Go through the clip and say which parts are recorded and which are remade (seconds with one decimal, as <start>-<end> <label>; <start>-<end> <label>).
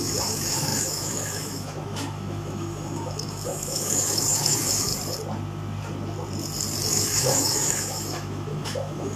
0.0-4.9 remade; 4.9-6.9 recorded; 6.9-9.2 remade